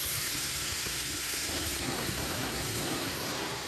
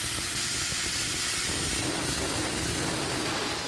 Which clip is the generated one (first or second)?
first